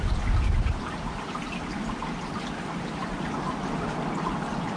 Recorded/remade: recorded